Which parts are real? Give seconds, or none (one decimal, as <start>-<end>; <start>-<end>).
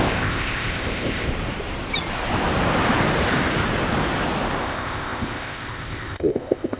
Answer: 1.3-4.6